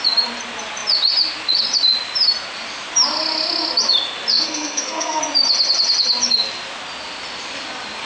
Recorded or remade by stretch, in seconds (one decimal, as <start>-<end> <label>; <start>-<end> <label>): 0.0-4.3 recorded; 4.3-5.2 remade; 5.2-8.1 recorded

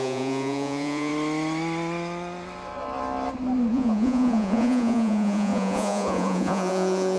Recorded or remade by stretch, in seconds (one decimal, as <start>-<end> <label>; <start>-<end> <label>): 0.0-1.1 remade; 1.1-3.7 recorded; 3.7-7.2 remade

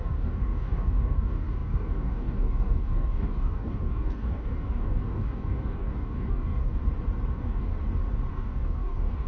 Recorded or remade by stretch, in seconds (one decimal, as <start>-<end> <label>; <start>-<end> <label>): 0.0-6.8 remade; 6.8-7.3 recorded; 7.3-7.7 remade; 7.7-8.3 recorded; 8.3-9.3 remade

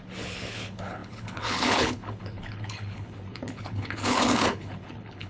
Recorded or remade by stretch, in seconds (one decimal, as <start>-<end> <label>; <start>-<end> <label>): 0.0-5.3 remade

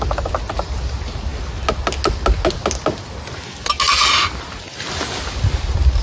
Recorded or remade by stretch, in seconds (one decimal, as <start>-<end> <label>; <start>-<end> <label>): 0.0-6.0 recorded

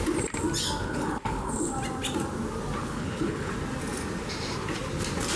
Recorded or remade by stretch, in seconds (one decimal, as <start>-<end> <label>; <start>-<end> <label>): 0.0-0.8 recorded; 0.8-1.7 remade; 1.7-2.8 recorded; 2.8-3.5 remade; 3.5-5.4 recorded